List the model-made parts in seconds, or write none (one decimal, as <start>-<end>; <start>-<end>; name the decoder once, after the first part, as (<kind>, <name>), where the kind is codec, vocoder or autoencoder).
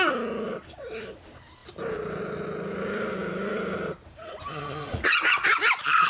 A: 4.8-5.5 (vocoder, Vocos)